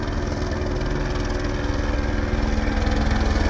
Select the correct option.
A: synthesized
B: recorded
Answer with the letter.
B